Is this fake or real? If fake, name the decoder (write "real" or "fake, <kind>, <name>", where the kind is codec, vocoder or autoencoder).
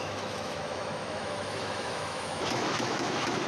fake, autoencoder, DAC-VAE